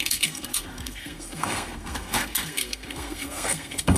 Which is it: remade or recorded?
remade